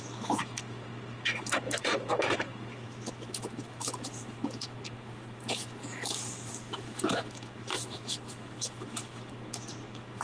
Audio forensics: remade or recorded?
remade